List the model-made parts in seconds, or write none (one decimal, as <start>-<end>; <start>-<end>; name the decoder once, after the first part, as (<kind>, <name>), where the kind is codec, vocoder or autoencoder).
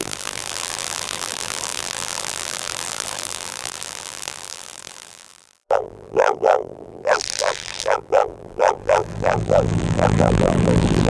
0.0-11.1 (vocoder, BigVGAN v2)